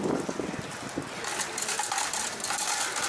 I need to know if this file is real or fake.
real